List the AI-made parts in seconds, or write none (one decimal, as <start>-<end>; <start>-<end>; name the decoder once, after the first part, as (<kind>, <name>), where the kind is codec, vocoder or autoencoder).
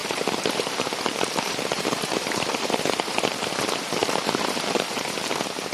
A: 0.0-3.4 (vocoder, BigVGAN v2); 4.0-5.7